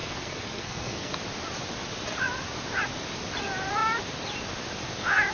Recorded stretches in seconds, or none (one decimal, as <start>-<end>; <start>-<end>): 1.1-5.3